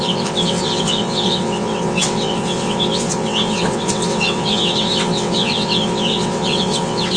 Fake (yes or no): yes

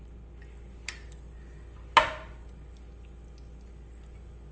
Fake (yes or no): no